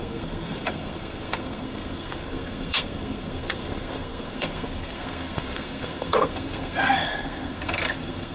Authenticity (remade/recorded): remade